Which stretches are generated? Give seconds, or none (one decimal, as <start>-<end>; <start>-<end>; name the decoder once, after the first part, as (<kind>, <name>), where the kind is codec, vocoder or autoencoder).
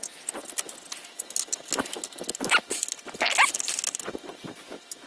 none